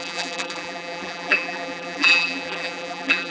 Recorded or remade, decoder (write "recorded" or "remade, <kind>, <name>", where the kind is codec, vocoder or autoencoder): remade, vocoder, BigVGAN v2